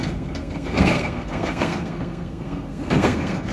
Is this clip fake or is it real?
fake